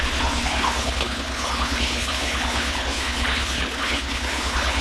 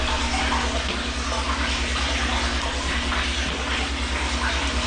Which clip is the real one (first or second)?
second